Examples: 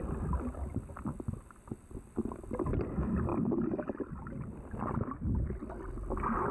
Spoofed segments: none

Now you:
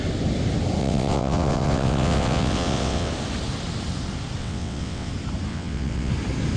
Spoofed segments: 0.8-3.1 (vocoder, WaveNeXt); 4.4-5.1; 5.5-6.1